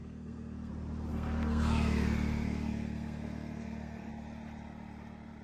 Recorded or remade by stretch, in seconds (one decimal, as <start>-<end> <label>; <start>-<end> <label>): 0.0-0.7 remade; 0.7-1.1 recorded; 1.1-4.1 remade; 4.1-5.4 recorded